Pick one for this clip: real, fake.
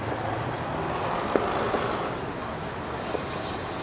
real